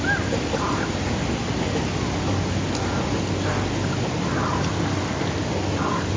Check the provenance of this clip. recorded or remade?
recorded